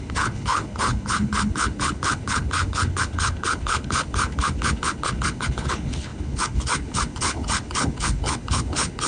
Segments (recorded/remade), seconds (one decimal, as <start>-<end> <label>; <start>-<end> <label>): 0.0-9.1 remade

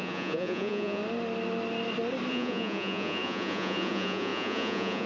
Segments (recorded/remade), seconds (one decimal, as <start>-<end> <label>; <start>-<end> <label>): 0.0-1.0 remade; 1.0-2.3 recorded; 2.3-5.1 remade

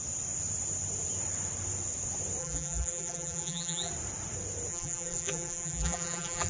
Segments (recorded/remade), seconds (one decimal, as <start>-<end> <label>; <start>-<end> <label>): 0.0-2.4 recorded; 2.4-3.9 remade; 3.9-4.7 recorded; 4.7-6.5 remade

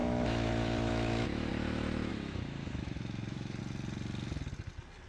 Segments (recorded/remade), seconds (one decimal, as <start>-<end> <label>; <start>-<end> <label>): 0.0-1.5 remade; 1.5-2.1 recorded; 2.1-3.6 remade; 3.6-5.1 recorded

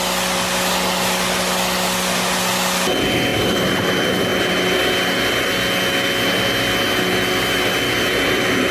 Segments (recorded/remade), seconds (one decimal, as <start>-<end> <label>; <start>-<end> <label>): 0.0-3.3 recorded; 3.3-3.9 remade; 3.9-8.7 recorded

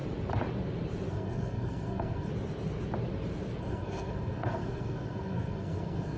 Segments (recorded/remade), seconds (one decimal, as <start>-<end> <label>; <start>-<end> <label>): 0.0-1.1 recorded; 1.1-2.3 remade; 2.3-3.6 recorded; 3.6-6.2 remade